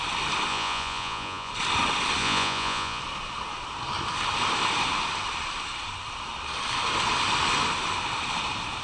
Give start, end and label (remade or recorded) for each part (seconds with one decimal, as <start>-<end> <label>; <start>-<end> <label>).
0.0-0.5 recorded; 0.5-1.5 remade; 1.5-2.2 recorded; 2.2-3.0 remade; 3.0-8.8 recorded